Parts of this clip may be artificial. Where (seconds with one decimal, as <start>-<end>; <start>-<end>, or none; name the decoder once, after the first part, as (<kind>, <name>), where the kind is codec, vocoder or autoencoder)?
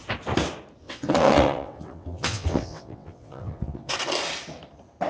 0.8-3.9 (vocoder, WaveNeXt)